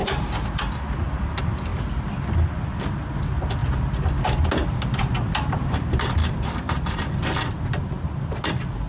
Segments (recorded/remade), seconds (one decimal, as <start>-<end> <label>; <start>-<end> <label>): 0.0-0.6 remade; 0.6-6.2 recorded; 6.2-7.0 remade; 7.0-8.9 recorded